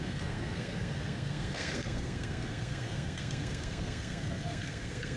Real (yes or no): no